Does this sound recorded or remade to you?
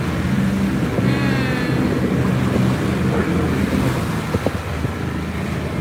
recorded